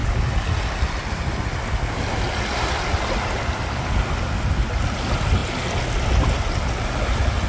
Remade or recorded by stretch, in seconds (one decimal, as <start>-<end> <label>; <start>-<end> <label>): 0.0-7.5 recorded